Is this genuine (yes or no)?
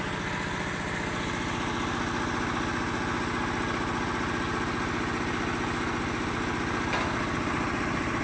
yes